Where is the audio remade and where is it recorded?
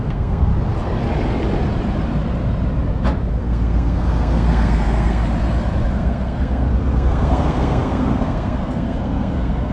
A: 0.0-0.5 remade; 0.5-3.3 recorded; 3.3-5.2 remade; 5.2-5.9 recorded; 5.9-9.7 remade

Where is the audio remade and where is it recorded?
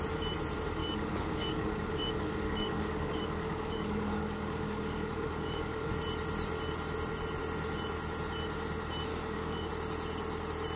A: 0.0-0.8 recorded; 0.8-5.9 remade; 5.9-9.1 recorded; 9.1-9.7 remade; 9.7-10.8 recorded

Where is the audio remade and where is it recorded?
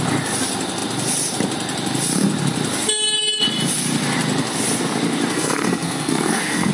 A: 0.0-5.3 recorded; 5.3-6.7 remade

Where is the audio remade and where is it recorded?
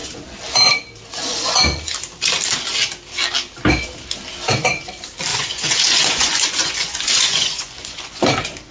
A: 0.0-1.1 recorded; 1.1-1.8 remade; 1.8-5.3 recorded; 5.3-8.2 remade; 8.2-8.7 recorded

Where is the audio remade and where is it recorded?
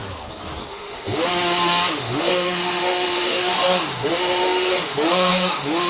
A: 0.0-0.7 recorded; 0.7-1.3 remade; 1.3-1.9 recorded; 1.9-5.9 remade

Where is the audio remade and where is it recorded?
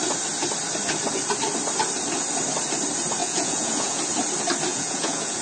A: 0.0-3.2 recorded; 3.2-4.0 remade; 4.0-4.7 recorded; 4.7-5.4 remade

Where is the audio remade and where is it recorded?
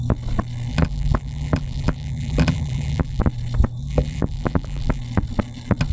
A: 0.0-0.7 recorded; 0.7-3.2 remade; 3.2-3.8 recorded; 3.8-5.0 remade; 5.0-5.9 recorded